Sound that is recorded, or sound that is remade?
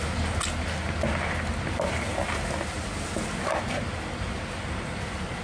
recorded